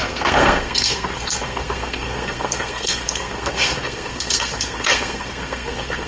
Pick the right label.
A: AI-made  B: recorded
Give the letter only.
A